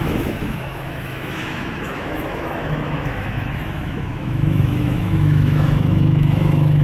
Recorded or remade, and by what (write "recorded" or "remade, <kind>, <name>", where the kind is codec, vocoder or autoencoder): remade, autoencoder, DAC-VAE